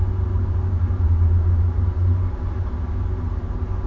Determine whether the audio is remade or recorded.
recorded